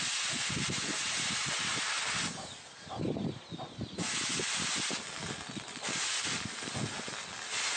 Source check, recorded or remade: recorded